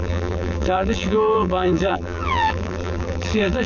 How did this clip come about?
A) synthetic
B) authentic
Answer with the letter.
A